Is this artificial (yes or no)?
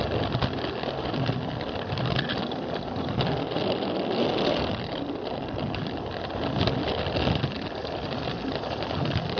no